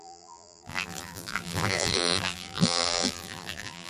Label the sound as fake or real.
fake